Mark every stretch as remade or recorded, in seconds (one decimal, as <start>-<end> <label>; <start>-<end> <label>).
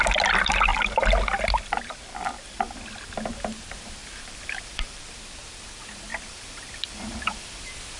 0.0-0.7 recorded; 0.7-3.3 remade; 3.3-4.0 recorded; 4.0-5.0 remade; 5.0-6.1 recorded; 6.1-7.6 remade; 7.6-8.0 recorded